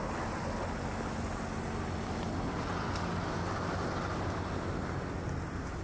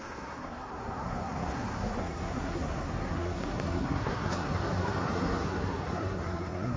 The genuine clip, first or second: first